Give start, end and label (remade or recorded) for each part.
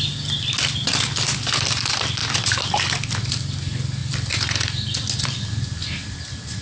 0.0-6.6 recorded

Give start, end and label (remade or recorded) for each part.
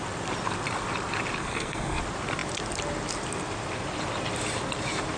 0.0-1.4 recorded; 1.4-2.0 remade; 2.0-5.2 recorded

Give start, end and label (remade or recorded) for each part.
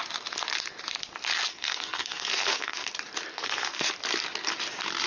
0.0-1.5 recorded; 1.5-2.9 remade; 2.9-3.3 recorded; 3.3-3.9 remade; 3.9-5.1 recorded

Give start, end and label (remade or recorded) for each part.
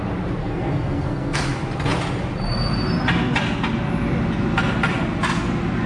0.0-0.4 recorded; 0.4-1.4 remade; 1.4-5.9 recorded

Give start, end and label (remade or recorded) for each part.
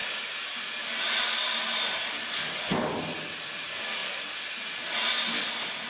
0.0-5.9 recorded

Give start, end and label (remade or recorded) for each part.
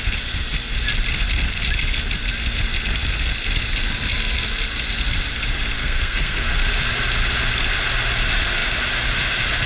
0.0-5.8 recorded; 5.8-6.5 remade; 6.5-9.7 recorded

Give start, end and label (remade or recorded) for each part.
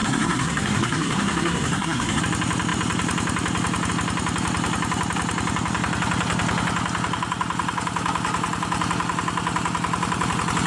0.0-2.2 remade; 2.2-10.7 recorded